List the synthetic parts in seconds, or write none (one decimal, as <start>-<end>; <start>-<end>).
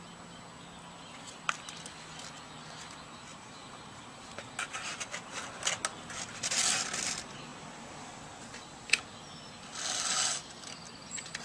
3.3-4.9